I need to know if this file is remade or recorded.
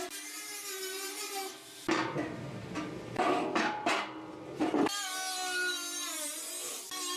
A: recorded